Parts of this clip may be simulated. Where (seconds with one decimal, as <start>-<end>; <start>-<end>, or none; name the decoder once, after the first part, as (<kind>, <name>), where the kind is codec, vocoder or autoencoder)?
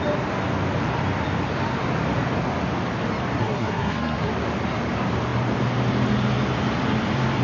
3.4-4.3 (codec, SNAC)